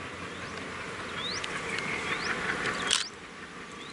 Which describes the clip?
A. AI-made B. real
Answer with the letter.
B